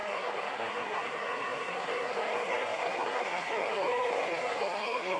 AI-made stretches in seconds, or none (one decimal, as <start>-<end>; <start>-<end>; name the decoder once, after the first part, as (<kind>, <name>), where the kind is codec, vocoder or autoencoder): 0.0-5.2 (codec, SNAC)